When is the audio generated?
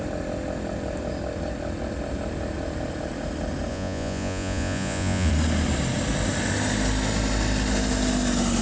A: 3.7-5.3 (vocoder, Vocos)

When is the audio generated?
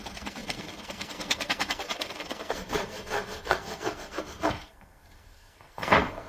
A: 0.0-6.3 (codec, SNAC)